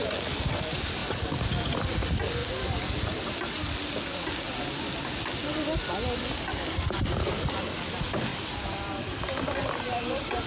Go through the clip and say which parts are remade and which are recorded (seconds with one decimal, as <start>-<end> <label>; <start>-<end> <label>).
0.0-10.5 recorded